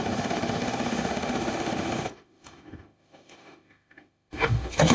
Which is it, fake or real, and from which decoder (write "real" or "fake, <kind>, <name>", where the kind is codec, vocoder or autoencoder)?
fake, autoencoder, DAC-VAE